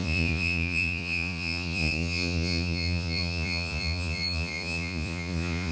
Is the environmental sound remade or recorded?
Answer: remade